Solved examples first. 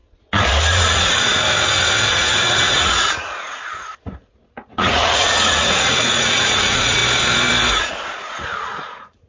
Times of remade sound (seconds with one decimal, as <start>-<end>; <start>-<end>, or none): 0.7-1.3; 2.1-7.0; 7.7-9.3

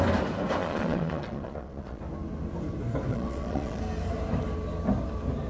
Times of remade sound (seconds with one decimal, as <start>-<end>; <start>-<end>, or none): 0.6-2.0; 3.1-3.8

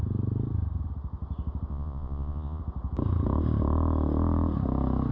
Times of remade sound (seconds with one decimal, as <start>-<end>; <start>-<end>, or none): 1.7-2.6